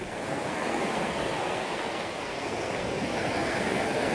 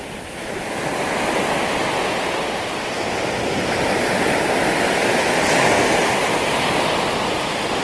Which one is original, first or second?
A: second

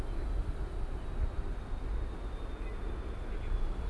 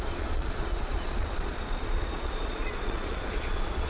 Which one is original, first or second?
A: first